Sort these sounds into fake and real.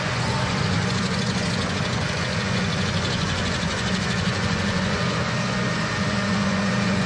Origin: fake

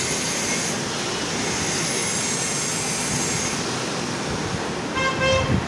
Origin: real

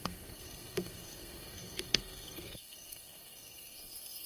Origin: fake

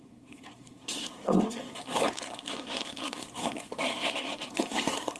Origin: fake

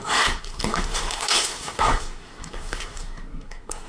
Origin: fake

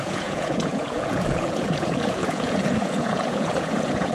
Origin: fake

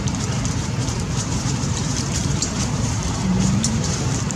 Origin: fake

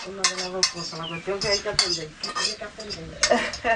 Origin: real